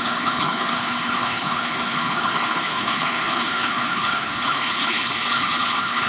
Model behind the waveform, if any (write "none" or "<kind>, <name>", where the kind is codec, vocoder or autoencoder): codec, HILCodec